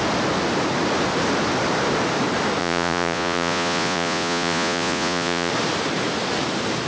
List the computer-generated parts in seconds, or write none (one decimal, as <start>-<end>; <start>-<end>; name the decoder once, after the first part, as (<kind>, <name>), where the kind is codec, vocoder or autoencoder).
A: 2.6-5.5 (vocoder, Vocos)